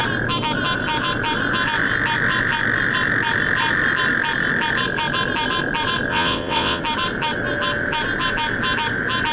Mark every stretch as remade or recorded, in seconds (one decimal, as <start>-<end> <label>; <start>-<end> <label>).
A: 0.0-6.1 recorded; 6.1-6.8 remade; 6.8-9.3 recorded